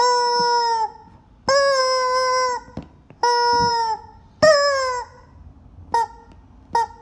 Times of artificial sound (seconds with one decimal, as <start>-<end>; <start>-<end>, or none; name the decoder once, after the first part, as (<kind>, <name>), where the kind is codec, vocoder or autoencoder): none